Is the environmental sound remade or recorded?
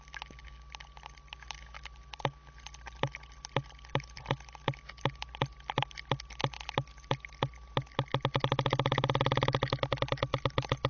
recorded